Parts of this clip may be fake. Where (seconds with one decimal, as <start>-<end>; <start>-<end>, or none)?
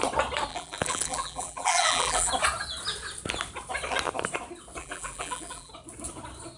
0.5-2.3; 4.8-5.7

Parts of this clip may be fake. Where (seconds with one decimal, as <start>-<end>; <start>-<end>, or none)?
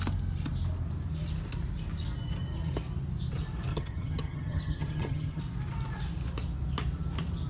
3.7-5.4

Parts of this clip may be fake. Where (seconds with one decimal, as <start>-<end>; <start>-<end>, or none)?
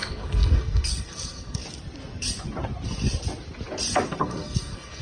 0.0-1.6; 4.2-5.0